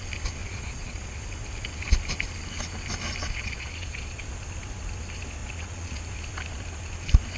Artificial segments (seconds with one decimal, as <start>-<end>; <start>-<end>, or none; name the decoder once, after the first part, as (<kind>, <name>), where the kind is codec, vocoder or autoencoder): 0.4-1.2 (vocoder, Vocos); 3.2-4.2; 5.4-6.0

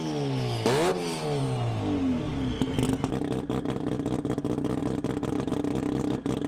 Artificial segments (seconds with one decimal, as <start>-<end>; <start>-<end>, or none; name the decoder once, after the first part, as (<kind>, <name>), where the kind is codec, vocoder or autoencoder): none

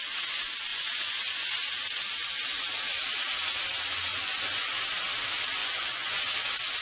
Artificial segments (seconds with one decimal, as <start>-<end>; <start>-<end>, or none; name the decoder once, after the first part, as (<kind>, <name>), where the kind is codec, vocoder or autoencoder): 0.7-1.7 (vocoder, Vocos); 4.1-4.7; 5.6-6.3

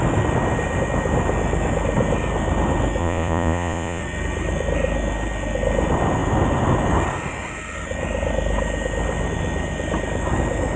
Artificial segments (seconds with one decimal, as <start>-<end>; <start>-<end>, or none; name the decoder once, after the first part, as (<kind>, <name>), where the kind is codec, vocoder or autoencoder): 3.0-4.0 (vocoder, Vocos)

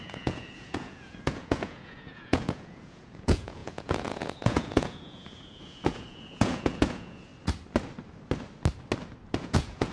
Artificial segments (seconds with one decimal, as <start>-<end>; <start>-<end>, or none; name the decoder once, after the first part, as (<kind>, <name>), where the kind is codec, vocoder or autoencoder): 0.0-7.3 (vocoder, Vocos); 9.3-9.9